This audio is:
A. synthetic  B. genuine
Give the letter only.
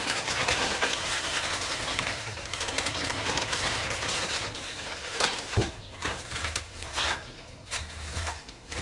A